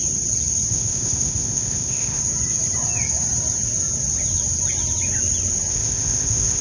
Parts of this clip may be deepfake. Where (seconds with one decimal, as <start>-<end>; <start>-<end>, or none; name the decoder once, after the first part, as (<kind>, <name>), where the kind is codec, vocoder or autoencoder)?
0.7-2.2 (codec, ZipCodec); 5.7-6.6